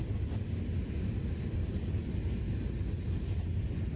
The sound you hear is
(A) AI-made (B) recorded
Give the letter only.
B